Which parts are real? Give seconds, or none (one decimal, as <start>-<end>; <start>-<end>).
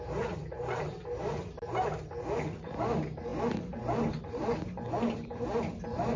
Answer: 0.0-0.4; 1.4-6.2